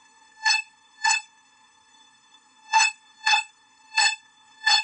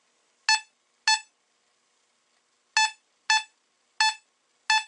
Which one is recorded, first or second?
second